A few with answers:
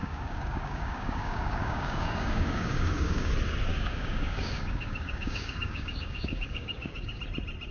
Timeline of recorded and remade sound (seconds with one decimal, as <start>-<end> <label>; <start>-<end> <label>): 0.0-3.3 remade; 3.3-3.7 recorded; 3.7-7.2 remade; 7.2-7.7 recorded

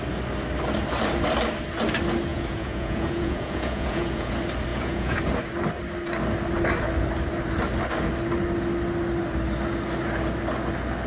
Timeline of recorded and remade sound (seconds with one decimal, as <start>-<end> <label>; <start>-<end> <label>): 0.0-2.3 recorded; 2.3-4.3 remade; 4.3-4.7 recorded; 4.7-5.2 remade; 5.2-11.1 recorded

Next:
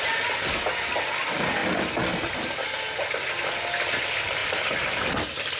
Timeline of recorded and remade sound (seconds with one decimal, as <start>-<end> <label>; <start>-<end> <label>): 0.0-1.6 recorded; 1.6-2.2 remade; 2.2-4.4 recorded; 4.4-5.6 remade

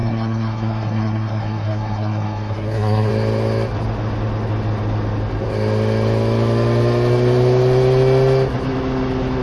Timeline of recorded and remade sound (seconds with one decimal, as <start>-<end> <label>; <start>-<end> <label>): 0.0-3.1 remade; 3.1-9.4 recorded

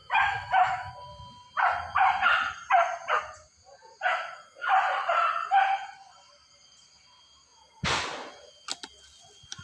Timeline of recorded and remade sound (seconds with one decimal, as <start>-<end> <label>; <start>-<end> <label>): 0.0-0.9 remade; 0.9-9.6 recorded

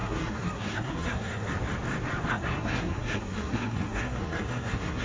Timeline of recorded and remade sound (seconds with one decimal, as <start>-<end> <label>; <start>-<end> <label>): 0.0-1.5 remade; 1.5-2.3 recorded; 2.3-5.0 remade